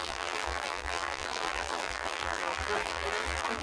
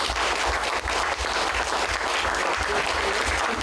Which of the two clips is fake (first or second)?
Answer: first